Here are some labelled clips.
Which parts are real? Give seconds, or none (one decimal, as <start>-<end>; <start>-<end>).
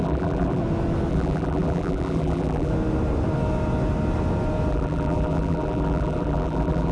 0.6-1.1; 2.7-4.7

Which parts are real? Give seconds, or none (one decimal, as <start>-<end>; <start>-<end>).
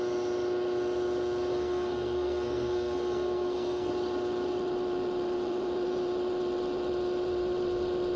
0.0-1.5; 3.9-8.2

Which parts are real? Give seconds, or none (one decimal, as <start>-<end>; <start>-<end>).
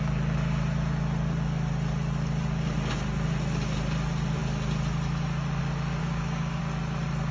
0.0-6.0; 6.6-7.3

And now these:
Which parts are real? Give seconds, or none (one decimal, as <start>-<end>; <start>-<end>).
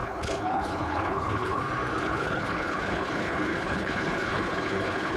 1.6-2.0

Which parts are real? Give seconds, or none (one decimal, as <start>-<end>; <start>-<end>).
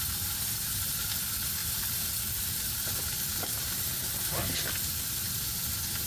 0.0-1.6; 2.7-3.5; 4.1-6.1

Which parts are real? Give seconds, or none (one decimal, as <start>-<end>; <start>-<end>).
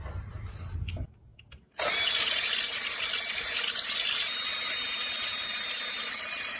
0.0-6.6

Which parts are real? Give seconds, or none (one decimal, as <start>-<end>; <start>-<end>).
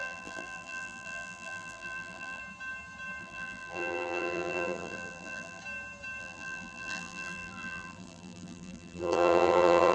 2.4-3.2; 5.6-6.2